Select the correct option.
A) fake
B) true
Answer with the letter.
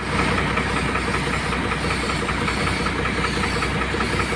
B